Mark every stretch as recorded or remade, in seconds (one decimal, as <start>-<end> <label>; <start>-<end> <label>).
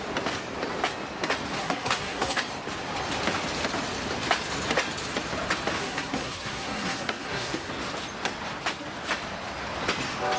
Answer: 0.0-1.6 recorded; 1.6-2.4 remade; 2.4-5.8 recorded; 5.8-7.7 remade; 7.7-10.4 recorded